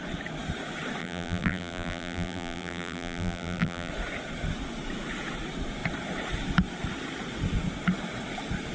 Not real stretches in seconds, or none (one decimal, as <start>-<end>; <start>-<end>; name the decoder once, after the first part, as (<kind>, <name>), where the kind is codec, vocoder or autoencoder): 1.0-3.9 (vocoder, BigVGAN v2)

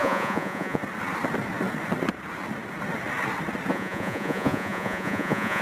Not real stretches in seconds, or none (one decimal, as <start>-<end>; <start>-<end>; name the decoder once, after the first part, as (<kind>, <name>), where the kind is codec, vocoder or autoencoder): 0.0-0.8 (vocoder, Vocos); 3.7-5.6